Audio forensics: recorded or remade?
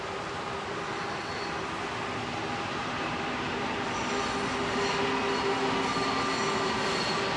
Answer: recorded